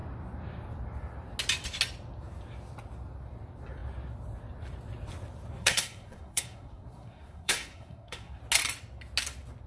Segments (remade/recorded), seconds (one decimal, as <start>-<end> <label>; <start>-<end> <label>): 0.0-5.6 recorded; 5.6-8.4 remade; 8.4-9.7 recorded